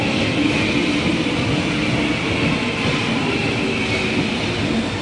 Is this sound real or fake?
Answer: real